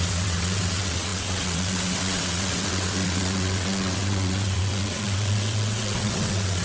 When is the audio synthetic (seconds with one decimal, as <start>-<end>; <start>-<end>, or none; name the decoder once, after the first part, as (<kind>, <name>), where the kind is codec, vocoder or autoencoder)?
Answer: 0.0-6.6 (vocoder, WaveNeXt)